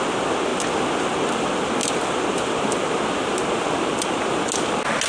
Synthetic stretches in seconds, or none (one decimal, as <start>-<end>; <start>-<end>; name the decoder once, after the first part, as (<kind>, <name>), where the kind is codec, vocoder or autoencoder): none